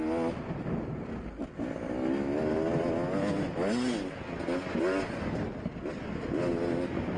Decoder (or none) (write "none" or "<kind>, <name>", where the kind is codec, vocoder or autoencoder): none